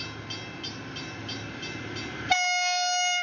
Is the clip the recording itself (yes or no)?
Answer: yes